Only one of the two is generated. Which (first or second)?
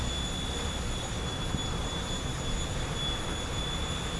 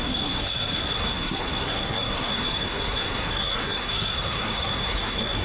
second